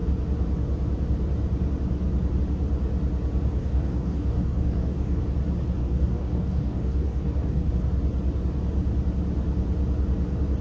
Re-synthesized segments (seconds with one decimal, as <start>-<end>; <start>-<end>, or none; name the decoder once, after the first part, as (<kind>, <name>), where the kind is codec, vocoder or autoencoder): 3.6-5.2 (codec, DAC); 5.8-7.7